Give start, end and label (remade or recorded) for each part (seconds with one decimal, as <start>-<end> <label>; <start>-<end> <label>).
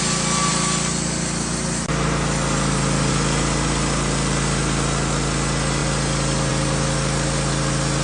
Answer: 0.0-8.0 recorded